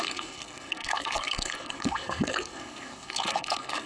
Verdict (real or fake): fake